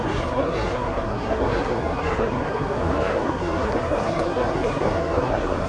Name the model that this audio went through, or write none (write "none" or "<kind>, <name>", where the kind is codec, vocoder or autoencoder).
codec, SNAC